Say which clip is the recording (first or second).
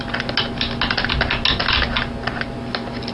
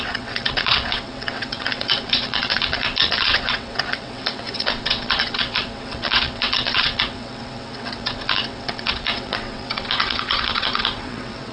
first